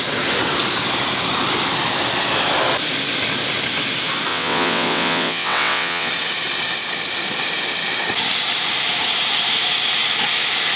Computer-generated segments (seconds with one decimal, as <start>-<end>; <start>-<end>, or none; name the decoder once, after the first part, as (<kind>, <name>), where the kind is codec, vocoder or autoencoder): 4.3-6.1 (vocoder, WaveNeXt)